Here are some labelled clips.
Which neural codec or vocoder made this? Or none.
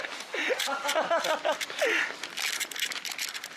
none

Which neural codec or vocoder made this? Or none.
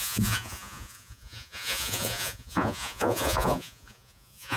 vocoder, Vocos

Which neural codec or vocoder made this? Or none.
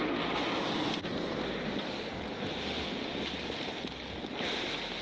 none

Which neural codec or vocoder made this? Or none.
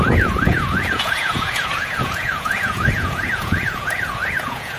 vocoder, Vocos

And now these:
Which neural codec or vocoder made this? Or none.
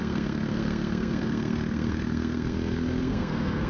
codec, SNAC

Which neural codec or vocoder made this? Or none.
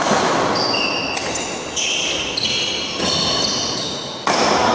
none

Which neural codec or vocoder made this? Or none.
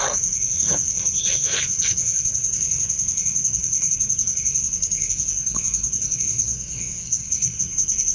codec, SNAC